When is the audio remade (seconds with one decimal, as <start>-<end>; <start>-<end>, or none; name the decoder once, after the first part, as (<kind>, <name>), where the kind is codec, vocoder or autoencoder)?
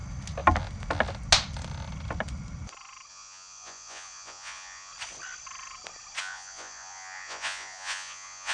3.1-4.9 (vocoder, Vocos); 6.2-8.5